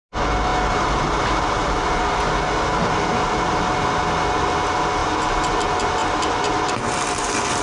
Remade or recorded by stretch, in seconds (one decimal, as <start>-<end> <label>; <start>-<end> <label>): 0.0-7.6 recorded

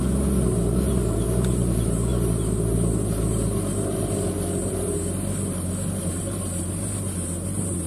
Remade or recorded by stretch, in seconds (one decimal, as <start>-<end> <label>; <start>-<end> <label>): 0.0-7.9 recorded

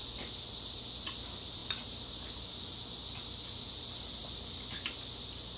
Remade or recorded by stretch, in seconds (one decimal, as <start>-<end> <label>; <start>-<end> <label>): 0.0-5.6 recorded

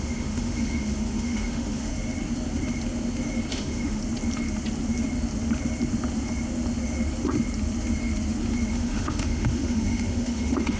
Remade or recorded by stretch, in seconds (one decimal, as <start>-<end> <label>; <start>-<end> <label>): 0.0-1.9 remade; 1.9-3.5 recorded; 3.5-4.0 remade; 4.0-8.7 recorded; 8.7-10.8 remade